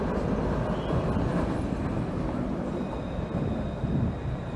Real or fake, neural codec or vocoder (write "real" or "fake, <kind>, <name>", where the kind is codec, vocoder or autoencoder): real